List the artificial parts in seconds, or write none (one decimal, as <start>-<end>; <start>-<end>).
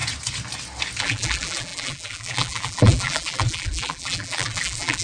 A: 1.0-5.0